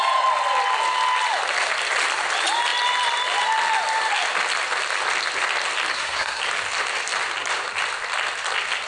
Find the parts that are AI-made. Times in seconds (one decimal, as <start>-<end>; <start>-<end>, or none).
5.9-6.4